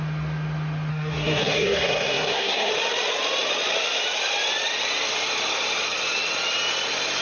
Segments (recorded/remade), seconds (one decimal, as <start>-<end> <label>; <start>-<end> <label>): 0.0-0.9 recorded; 0.9-2.7 remade; 2.7-7.2 recorded